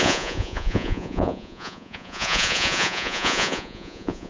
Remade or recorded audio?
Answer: remade